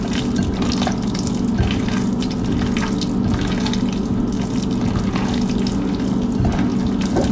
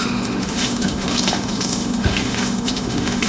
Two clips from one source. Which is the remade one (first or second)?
second